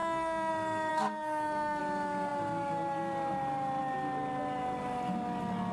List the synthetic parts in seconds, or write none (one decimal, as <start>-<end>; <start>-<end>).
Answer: 0.0-0.5; 0.9-1.8